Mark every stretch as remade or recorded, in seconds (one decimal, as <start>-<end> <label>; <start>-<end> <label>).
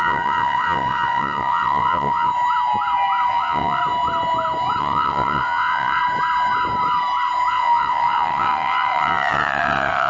0.0-2.3 remade; 2.3-3.3 recorded; 3.3-3.8 remade; 3.8-4.8 recorded; 4.8-6.0 remade; 6.0-7.5 recorded; 7.5-10.1 remade